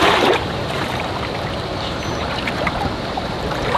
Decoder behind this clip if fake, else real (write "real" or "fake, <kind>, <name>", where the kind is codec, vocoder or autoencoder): fake, vocoder, BigVGAN v2